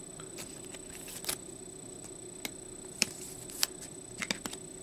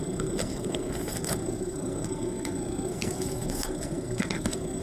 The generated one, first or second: second